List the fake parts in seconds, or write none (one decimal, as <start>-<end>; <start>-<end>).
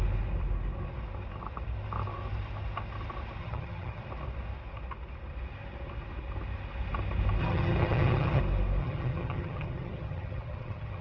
3.4-4.0; 7.4-8.4; 8.8-11.0